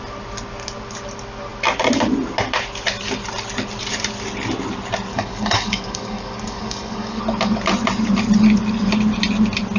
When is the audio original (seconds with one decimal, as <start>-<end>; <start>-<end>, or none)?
0.0-5.1; 7.2-9.8